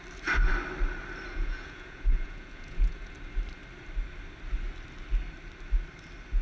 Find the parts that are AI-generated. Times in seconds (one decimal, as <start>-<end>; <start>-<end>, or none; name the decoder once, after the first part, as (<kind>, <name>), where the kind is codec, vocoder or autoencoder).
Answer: 1.3-3.1 (vocoder, Vocos)